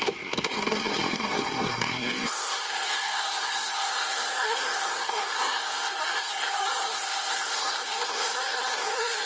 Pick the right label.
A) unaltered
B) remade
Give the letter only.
B